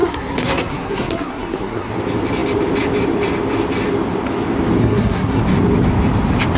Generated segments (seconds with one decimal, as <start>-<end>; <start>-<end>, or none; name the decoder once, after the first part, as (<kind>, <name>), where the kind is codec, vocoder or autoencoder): 0.0-1.9 (codec, SNAC); 4.8-5.4